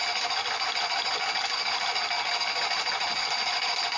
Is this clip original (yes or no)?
yes